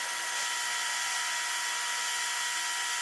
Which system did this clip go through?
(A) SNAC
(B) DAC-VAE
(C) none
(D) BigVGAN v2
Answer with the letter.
C